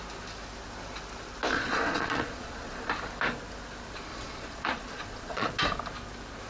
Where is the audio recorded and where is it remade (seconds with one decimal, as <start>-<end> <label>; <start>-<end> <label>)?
0.0-1.5 recorded; 1.5-2.9 remade; 2.9-4.1 recorded; 4.1-5.5 remade; 5.5-6.5 recorded